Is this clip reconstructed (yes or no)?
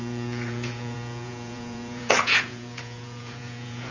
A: yes